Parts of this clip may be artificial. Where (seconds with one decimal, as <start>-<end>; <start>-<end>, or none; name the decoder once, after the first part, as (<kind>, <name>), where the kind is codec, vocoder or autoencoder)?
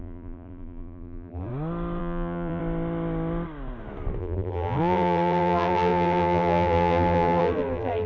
0.0-1.5 (vocoder, BigVGAN v2); 2.0-2.6; 4.2-8.1